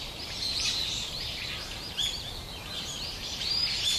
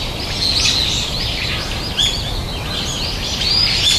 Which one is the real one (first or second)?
second